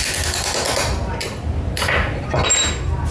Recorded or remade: recorded